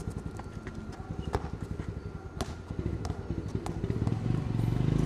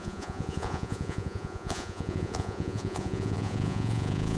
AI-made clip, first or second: second